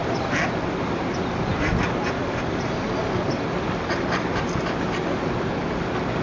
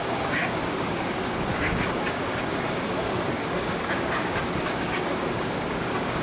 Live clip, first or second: first